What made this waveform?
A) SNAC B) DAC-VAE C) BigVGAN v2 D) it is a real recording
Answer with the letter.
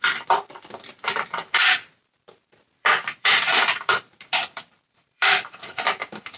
C